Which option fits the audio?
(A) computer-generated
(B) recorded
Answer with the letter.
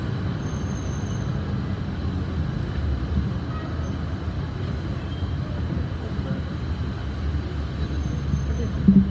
B